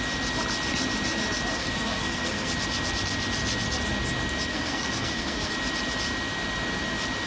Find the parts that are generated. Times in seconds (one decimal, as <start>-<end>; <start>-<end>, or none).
1.5-2.5; 4.5-5.5